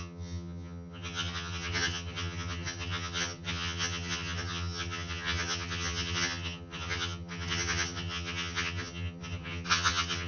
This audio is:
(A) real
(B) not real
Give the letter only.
B